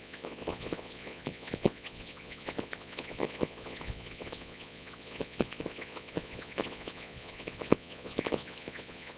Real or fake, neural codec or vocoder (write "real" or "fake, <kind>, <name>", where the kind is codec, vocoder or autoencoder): fake, vocoder, Vocos